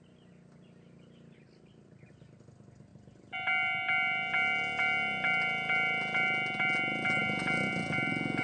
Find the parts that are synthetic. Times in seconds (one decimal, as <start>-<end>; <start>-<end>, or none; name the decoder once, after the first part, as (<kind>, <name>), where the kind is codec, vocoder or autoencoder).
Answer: none